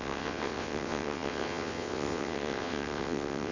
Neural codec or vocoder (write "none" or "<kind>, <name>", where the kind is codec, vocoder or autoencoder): vocoder, WaveNeXt